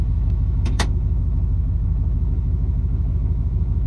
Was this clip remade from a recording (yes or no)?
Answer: yes